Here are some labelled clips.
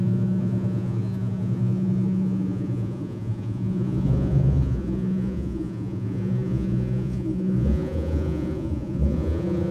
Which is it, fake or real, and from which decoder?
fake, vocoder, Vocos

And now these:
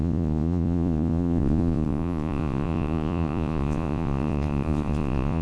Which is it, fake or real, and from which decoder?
fake, vocoder, Vocos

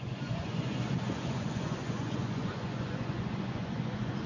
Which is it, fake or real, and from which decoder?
fake, vocoder, Vocos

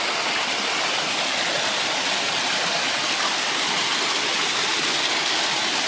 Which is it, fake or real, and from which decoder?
real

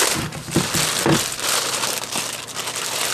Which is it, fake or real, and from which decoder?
real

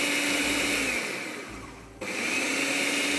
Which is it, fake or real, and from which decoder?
real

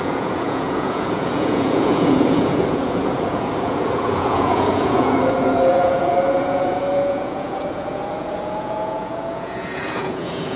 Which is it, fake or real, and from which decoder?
fake, vocoder, Vocos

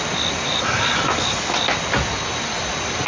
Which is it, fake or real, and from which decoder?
real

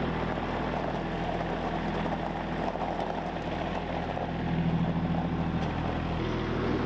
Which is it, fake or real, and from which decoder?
real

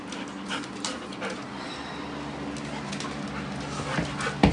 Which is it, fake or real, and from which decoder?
real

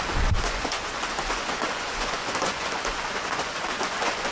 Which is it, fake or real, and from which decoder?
fake, vocoder, Vocos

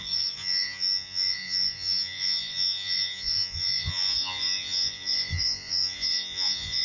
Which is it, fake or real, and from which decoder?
fake, vocoder, Vocos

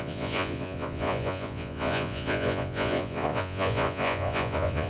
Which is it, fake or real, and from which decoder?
fake, vocoder, Vocos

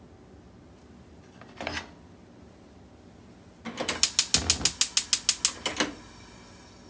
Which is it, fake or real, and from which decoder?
real